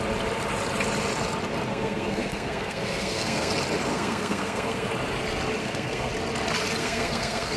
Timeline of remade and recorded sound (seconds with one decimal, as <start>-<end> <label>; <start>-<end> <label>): 0.0-1.7 recorded; 1.7-3.5 remade; 3.5-3.9 recorded; 3.9-4.9 remade; 4.9-5.6 recorded; 5.6-6.1 remade; 6.1-6.8 recorded; 6.8-7.6 remade